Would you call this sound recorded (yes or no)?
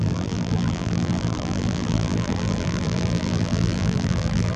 no